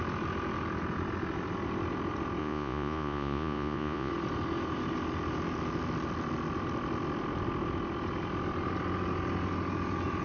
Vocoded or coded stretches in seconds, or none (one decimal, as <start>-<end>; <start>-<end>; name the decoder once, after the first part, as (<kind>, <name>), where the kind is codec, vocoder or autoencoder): 2.4-4.1 (vocoder, Vocos)